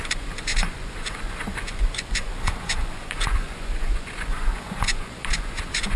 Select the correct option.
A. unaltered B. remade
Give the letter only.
B